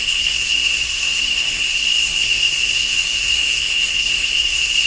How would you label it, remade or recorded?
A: remade